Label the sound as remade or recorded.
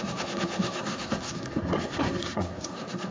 remade